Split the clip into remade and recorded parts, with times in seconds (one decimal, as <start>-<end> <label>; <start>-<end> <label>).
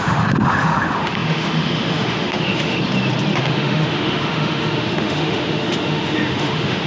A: 0.0-2.8 remade; 2.8-3.4 recorded; 3.4-6.9 remade